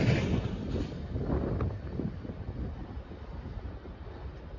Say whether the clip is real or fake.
real